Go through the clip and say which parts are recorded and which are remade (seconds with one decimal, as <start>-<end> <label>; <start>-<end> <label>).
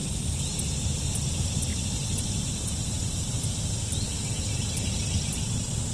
0.0-3.0 recorded; 3.0-4.4 remade; 4.4-5.9 recorded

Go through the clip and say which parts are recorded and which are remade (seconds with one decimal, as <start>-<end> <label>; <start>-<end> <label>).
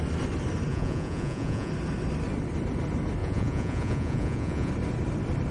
0.0-0.7 recorded; 0.7-1.7 remade; 1.7-3.2 recorded; 3.2-4.7 remade; 4.7-5.5 recorded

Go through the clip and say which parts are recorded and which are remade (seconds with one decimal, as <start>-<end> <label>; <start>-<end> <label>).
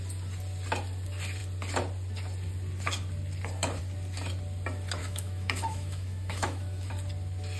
0.0-5.0 recorded; 5.0-6.9 remade; 6.9-7.6 recorded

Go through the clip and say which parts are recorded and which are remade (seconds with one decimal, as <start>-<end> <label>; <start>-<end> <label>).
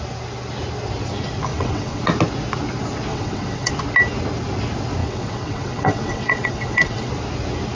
0.0-1.5 recorded; 1.5-2.0 remade; 2.0-3.1 recorded; 3.1-3.7 remade; 3.7-5.0 recorded; 5.0-7.1 remade; 7.1-7.7 recorded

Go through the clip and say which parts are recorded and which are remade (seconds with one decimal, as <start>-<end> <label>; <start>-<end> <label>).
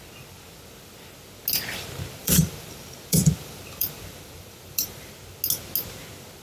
0.0-2.2 recorded; 2.2-5.1 remade; 5.1-6.4 recorded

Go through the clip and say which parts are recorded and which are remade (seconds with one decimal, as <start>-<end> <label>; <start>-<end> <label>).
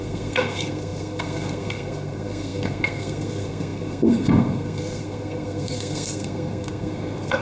0.0-7.4 remade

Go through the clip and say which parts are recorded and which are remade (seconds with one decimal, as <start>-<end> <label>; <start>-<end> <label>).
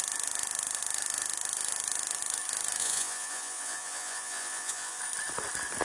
0.0-2.8 recorded; 2.8-5.0 remade; 5.0-5.8 recorded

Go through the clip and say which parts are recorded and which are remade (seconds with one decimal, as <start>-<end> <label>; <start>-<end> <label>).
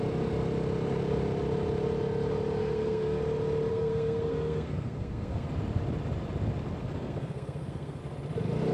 0.0-2.6 recorded; 2.6-3.2 remade; 3.2-3.7 recorded; 3.7-5.5 remade; 5.5-6.8 recorded; 6.8-8.0 remade; 8.0-8.7 recorded